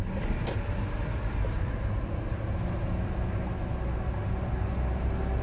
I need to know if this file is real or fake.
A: real